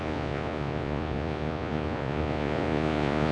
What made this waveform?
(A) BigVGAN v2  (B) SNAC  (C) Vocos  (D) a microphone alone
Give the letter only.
C